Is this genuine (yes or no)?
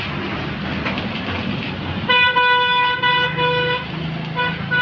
yes